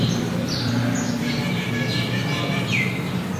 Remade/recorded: remade